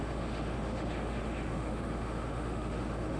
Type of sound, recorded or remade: remade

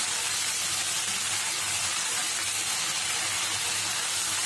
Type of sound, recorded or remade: recorded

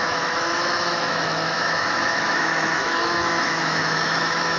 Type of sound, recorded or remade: remade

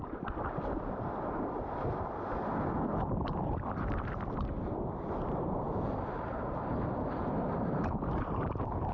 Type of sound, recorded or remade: recorded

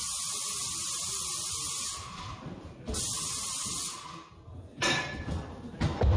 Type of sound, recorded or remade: recorded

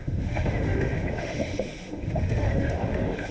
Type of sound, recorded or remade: remade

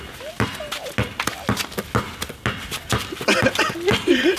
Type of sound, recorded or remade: recorded